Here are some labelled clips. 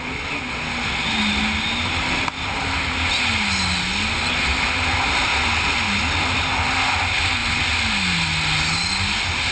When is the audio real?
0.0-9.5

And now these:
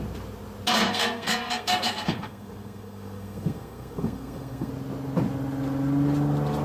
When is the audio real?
0.0-0.7; 4.7-6.6

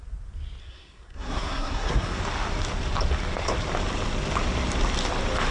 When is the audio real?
0.0-0.6; 2.2-5.5

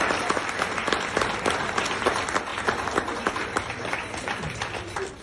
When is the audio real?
0.0-5.2

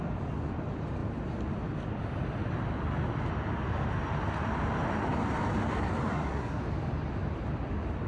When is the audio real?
0.0-6.1; 6.6-8.1

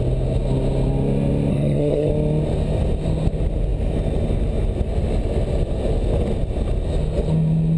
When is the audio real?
0.0-1.5; 2.1-7.8

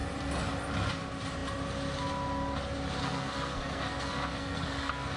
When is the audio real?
0.0-3.0